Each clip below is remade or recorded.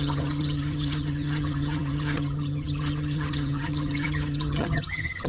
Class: remade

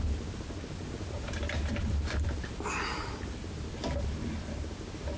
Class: recorded